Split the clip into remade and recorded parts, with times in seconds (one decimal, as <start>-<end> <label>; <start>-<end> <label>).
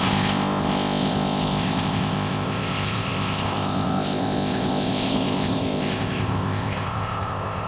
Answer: 0.0-7.7 remade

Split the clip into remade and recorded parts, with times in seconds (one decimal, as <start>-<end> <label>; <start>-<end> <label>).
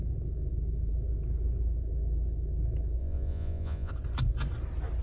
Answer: 0.0-3.0 recorded; 3.0-3.9 remade; 3.9-5.0 recorded